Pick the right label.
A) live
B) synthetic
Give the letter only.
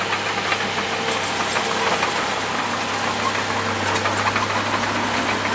A